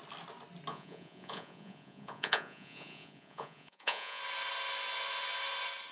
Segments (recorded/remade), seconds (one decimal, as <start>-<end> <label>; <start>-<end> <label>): 0.0-0.7 recorded; 0.7-4.2 remade; 4.2-5.9 recorded